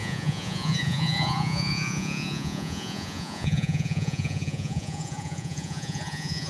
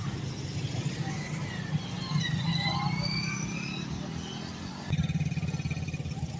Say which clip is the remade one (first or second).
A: first